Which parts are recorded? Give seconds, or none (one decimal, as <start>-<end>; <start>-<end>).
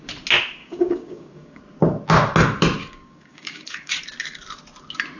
0.0-0.6; 1.6-2.8; 4.0-5.2